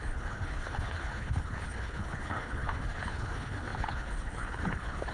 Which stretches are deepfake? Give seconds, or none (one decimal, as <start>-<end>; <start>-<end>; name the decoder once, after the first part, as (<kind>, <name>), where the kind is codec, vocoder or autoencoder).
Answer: 0.0-5.1 (codec, HILCodec)